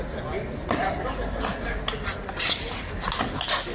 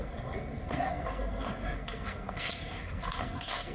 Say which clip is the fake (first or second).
second